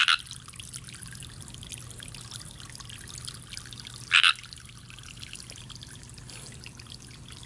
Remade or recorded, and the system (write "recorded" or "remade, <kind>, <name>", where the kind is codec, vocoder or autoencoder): recorded